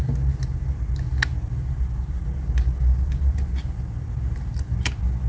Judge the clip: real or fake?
real